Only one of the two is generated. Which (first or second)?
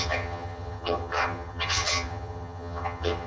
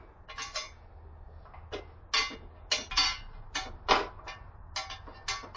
first